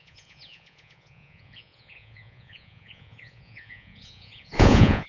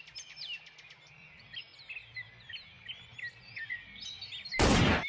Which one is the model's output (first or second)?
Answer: first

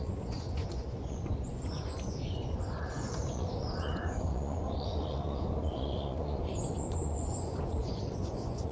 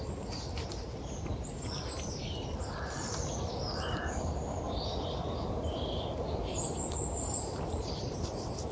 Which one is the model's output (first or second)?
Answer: first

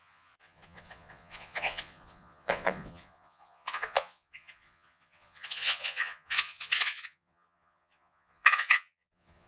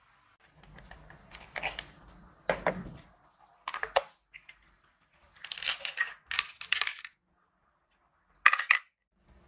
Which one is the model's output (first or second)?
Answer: first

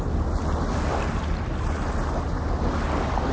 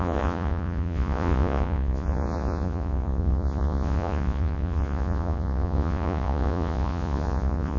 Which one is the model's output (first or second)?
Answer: second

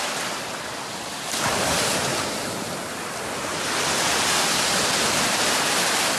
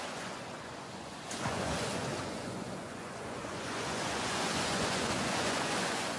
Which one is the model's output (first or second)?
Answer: second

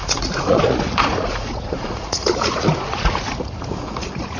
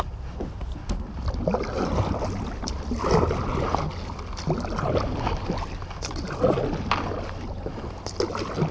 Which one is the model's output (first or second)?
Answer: first